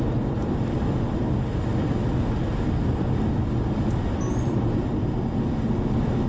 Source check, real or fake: real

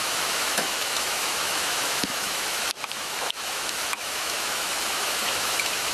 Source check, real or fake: fake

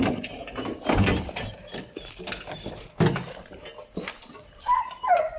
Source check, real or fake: real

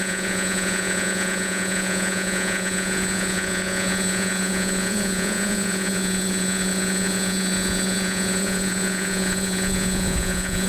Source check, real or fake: fake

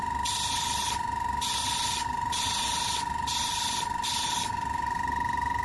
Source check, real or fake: real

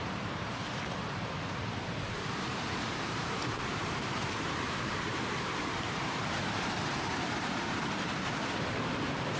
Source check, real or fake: fake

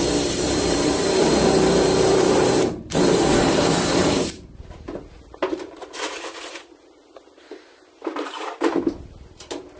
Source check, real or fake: fake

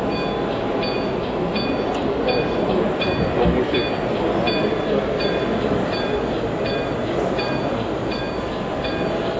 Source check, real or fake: real